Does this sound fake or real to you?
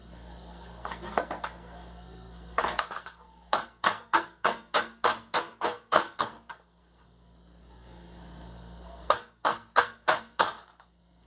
fake